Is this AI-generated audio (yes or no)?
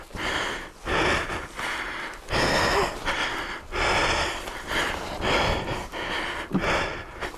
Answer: no